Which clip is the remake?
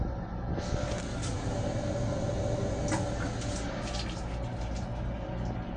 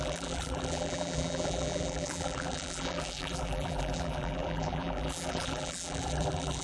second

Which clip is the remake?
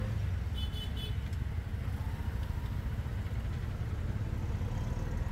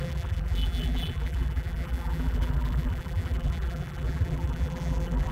second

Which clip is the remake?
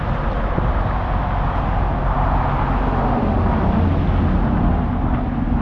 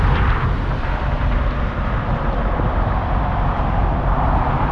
second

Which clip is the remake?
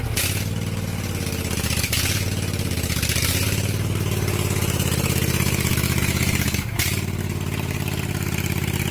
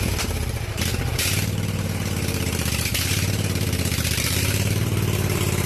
second